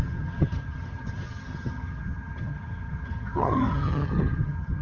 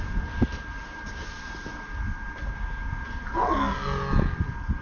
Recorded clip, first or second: second